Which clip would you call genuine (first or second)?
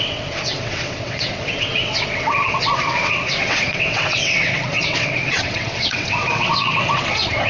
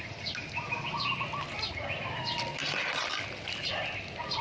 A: second